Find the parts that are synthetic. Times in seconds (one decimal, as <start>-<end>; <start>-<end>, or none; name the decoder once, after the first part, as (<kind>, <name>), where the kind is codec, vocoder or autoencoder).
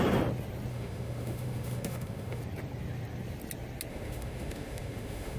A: 0.7-2.4 (autoencoder, DAC-VAE); 3.9-5.4